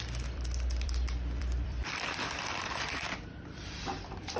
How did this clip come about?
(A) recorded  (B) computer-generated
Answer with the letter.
B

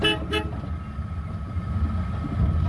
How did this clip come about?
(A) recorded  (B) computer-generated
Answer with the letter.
A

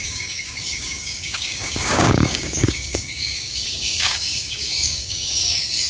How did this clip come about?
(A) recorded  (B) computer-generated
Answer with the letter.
B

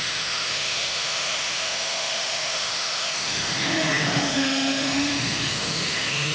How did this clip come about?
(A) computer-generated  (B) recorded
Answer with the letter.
A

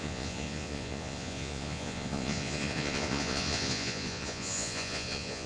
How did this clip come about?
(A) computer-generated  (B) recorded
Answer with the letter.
A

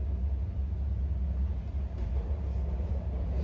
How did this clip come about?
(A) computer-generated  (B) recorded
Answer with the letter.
B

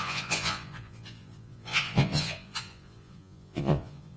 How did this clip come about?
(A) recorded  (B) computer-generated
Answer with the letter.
B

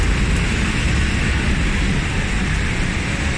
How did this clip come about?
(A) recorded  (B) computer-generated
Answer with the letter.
A